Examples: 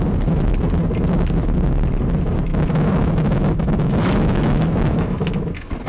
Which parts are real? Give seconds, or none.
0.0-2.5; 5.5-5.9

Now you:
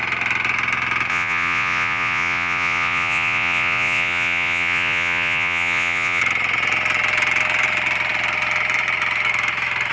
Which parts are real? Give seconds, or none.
0.0-1.1; 6.2-9.9